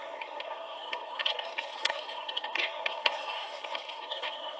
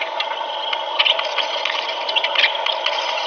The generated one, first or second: first